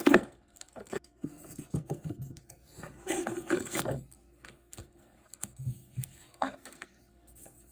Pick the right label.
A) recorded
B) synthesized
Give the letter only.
B